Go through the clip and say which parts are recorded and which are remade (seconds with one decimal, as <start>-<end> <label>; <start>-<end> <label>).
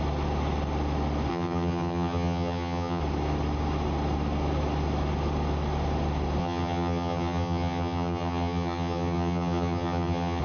0.0-1.3 recorded; 1.3-3.0 remade; 3.0-6.4 recorded; 6.4-10.4 remade